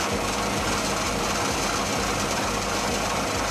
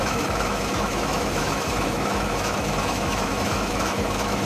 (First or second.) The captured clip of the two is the first